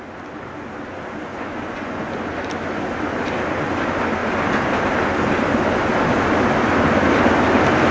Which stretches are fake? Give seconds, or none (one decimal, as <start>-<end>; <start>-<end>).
1.3-2.0